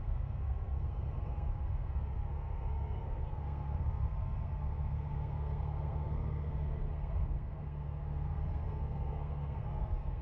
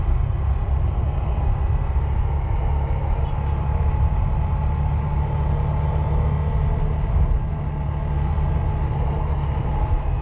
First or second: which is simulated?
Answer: first